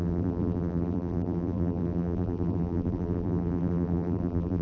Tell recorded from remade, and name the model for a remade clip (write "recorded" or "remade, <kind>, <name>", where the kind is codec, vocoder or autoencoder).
remade, vocoder, BigVGAN v2